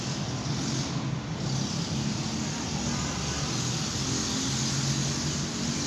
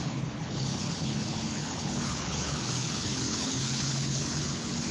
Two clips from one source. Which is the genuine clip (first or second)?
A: first